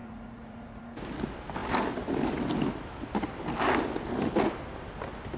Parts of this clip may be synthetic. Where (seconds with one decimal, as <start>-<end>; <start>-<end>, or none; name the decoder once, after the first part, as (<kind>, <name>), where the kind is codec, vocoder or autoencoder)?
0.0-0.8 (vocoder, Vocos)